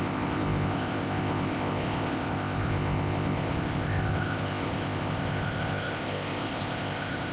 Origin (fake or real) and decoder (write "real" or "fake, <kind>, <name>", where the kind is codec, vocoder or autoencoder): fake, codec, ZipCodec